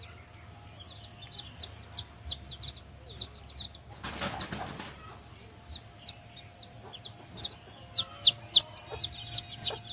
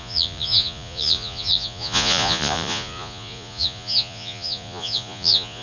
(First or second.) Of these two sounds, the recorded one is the first